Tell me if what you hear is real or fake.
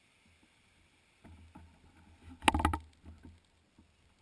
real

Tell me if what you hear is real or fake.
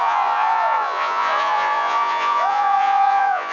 fake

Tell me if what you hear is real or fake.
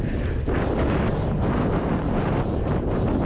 real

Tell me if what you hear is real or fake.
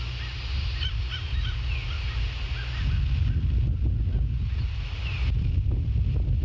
real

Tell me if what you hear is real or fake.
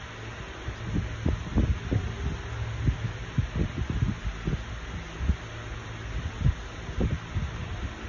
real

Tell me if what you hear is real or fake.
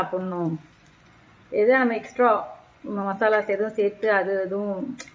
fake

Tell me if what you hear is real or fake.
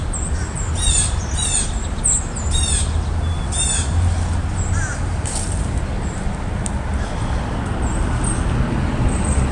real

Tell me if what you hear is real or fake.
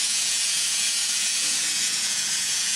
fake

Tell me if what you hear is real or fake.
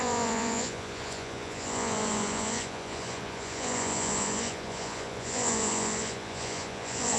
fake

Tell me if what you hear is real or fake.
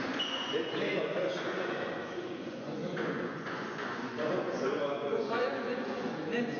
fake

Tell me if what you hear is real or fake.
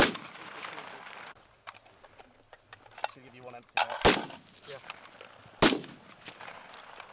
real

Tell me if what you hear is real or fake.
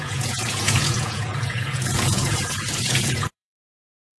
fake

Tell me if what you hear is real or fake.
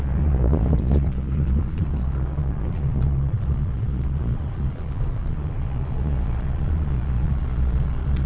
fake